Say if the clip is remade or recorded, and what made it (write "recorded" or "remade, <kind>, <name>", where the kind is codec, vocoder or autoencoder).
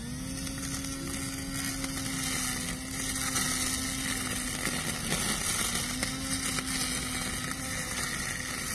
recorded